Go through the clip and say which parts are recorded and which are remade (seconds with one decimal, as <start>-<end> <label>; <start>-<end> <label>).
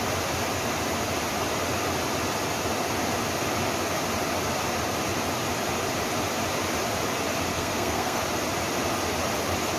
0.0-7.5 recorded; 7.5-8.2 remade; 8.2-9.8 recorded